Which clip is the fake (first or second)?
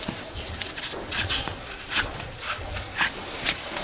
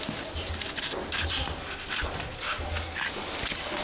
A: first